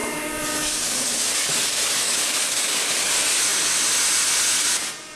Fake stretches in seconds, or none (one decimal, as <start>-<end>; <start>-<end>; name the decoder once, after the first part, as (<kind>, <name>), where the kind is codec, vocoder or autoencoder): 0.0-3.1 (codec, DAC)